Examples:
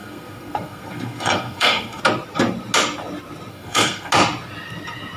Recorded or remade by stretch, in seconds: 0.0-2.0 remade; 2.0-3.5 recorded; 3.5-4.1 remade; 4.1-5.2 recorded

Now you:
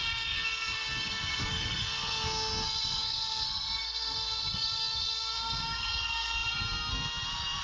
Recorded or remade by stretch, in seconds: 0.0-7.6 remade

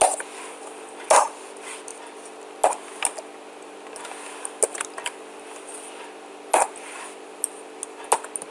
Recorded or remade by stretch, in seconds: 0.0-8.5 recorded

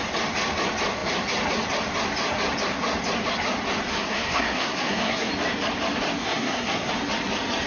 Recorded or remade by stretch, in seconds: 0.0-3.9 recorded; 3.9-5.3 remade; 5.3-6.2 recorded; 6.2-6.9 remade; 6.9-7.7 recorded